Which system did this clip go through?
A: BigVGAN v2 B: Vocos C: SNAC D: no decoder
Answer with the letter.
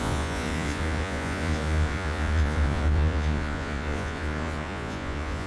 B